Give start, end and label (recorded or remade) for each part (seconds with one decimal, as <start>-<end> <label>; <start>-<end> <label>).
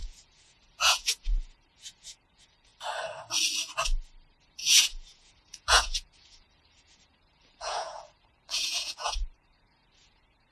0.0-2.7 remade; 2.7-4.4 recorded; 4.4-10.5 remade